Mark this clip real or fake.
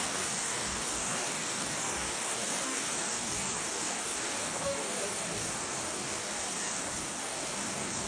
fake